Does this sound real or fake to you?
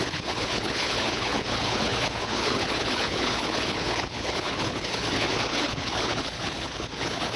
fake